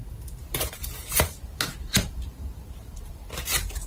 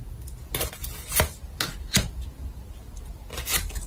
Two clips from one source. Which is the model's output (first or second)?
first